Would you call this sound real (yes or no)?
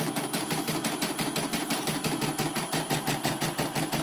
no